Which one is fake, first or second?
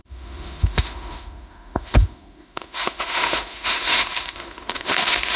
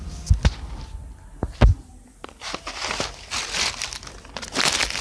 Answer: first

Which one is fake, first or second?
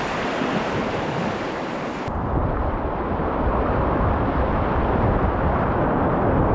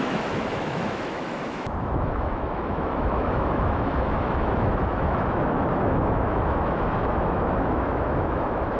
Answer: second